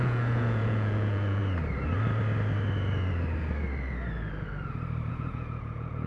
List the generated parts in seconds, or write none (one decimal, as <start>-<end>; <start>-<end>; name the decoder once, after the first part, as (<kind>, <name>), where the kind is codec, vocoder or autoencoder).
0.0-1.4 (vocoder, Vocos); 5.1-6.1